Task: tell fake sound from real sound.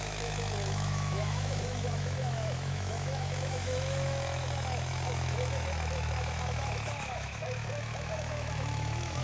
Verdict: fake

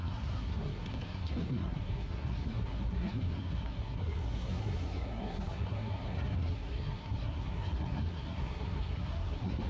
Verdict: fake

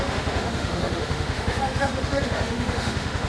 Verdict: fake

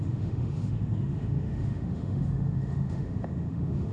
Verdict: fake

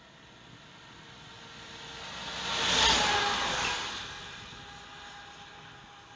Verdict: real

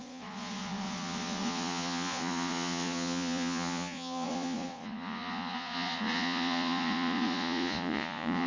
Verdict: fake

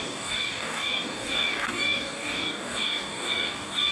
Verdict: fake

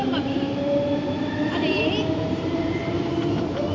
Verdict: fake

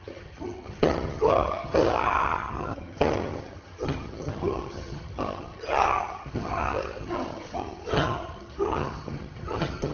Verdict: fake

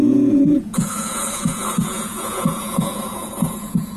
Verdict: fake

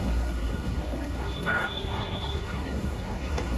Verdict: fake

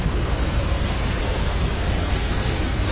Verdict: fake